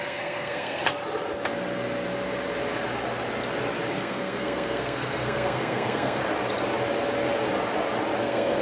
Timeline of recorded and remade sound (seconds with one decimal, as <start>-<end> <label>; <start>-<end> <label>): 0.0-0.8 remade; 0.8-3.9 recorded; 3.9-6.2 remade; 6.2-8.2 recorded; 8.2-8.6 remade